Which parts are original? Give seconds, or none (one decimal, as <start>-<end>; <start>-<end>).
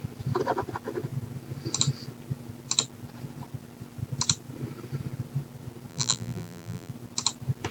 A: 0.0-5.9; 6.9-7.7